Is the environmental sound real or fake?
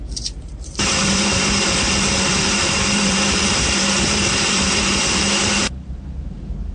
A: fake